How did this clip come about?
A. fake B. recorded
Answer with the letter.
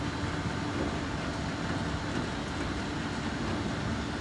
B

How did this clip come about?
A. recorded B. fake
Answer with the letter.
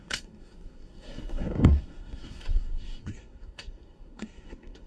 B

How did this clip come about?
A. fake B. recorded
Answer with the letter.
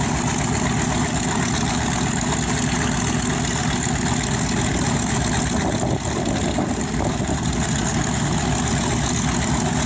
B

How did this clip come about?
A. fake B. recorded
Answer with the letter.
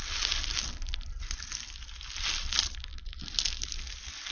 B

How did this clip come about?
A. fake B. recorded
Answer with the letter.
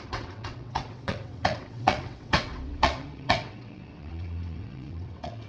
A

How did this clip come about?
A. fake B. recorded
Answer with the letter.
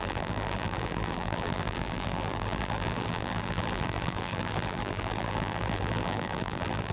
A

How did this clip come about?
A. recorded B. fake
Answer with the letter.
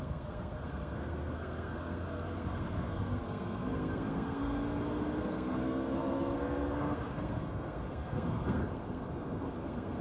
B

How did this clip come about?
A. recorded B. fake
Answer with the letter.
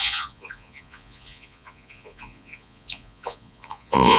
B